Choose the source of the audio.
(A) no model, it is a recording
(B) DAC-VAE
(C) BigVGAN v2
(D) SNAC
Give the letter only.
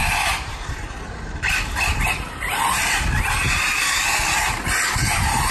A